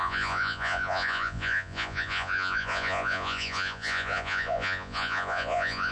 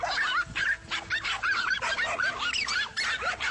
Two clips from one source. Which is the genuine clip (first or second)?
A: second